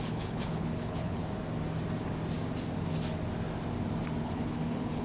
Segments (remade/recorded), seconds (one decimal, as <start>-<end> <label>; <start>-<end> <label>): 0.0-1.2 remade; 1.2-4.2 recorded; 4.2-5.0 remade